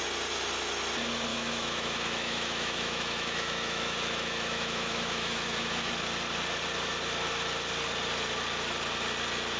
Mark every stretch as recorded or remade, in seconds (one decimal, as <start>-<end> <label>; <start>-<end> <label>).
0.0-1.3 recorded; 1.3-5.9 remade; 5.9-9.6 recorded